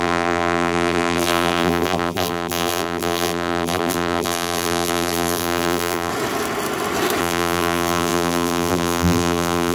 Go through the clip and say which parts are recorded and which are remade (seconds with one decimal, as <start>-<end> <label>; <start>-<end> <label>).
0.0-6.1 remade; 6.1-7.2 recorded; 7.2-9.7 remade